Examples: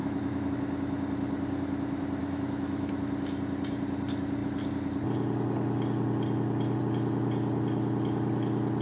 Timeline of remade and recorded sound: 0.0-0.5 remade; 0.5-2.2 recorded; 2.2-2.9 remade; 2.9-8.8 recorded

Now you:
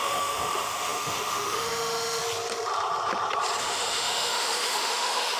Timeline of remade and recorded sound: 0.0-2.2 remade; 2.2-3.6 recorded; 3.6-5.4 remade

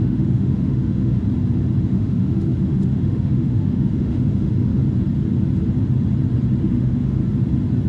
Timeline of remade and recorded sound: 0.0-1.2 remade; 1.2-1.9 recorded; 1.9-4.8 remade; 4.8-6.6 recorded; 6.6-7.2 remade; 7.2-7.9 recorded

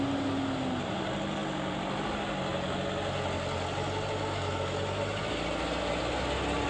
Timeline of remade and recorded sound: 0.0-6.7 recorded

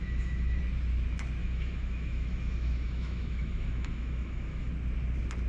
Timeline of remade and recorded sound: 0.0-0.6 remade; 0.6-1.4 recorded; 1.4-4.7 remade; 4.7-5.5 recorded

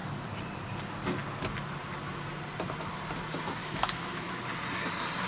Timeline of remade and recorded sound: 0.0-3.6 recorded; 3.6-4.3 remade; 4.3-5.3 recorded